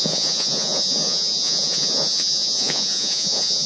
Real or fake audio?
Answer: fake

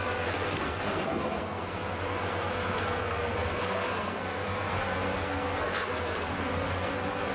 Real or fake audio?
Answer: fake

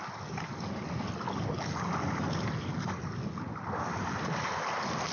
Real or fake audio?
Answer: real